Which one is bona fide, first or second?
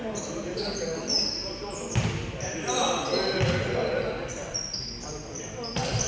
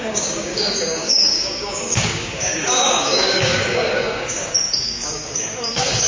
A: first